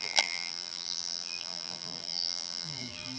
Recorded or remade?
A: remade